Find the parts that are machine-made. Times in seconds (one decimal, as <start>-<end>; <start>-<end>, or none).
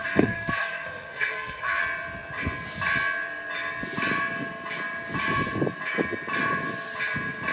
0.0-1.8